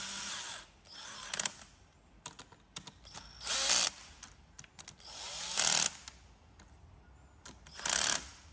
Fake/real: real